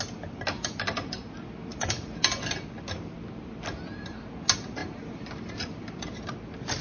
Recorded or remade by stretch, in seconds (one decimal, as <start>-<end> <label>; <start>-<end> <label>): 0.0-1.7 recorded; 1.7-2.4 remade; 2.4-4.8 recorded; 4.8-6.3 remade; 6.3-6.8 recorded